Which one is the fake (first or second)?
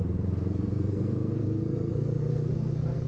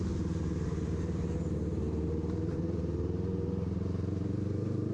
first